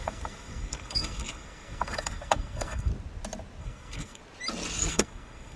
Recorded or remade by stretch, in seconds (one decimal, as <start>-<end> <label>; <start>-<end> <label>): 0.0-2.9 remade; 2.9-3.6 recorded; 3.6-4.2 remade; 4.2-4.9 recorded; 4.9-5.6 remade